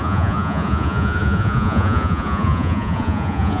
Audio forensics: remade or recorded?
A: remade